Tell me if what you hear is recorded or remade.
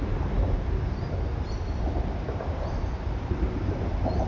remade